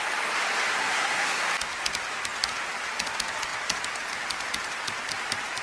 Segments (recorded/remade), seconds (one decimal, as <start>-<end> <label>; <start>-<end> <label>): 0.0-0.8 recorded; 0.8-1.4 remade; 1.4-5.6 recorded